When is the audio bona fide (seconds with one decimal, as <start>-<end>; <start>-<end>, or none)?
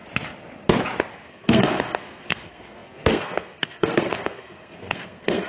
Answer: 0.0-1.3